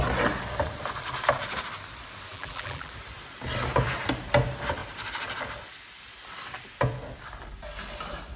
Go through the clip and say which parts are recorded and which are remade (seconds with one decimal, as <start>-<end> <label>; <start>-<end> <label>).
0.0-2.3 recorded; 2.3-2.9 remade; 2.9-8.4 recorded